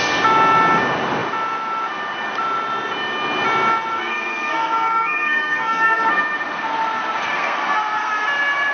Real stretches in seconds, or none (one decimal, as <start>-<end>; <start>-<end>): 0.0-3.9; 6.0-7.3; 8.1-8.7